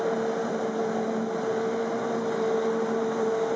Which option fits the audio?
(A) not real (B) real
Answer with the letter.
B